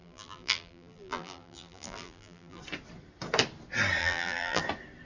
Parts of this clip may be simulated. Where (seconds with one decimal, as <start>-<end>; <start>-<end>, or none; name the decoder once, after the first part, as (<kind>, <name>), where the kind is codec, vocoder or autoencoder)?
0.0-2.6 (vocoder, BigVGAN v2); 4.0-4.6